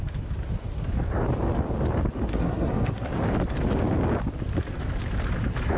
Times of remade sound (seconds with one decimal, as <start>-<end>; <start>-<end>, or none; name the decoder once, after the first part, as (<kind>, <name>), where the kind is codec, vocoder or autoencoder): 2.3-3.1 (codec, SNAC)